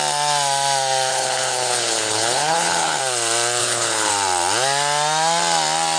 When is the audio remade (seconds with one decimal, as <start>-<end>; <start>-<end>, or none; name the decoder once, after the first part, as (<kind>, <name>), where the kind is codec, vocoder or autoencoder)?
1.1-3.0 (codec, HILCodec); 3.6-4.1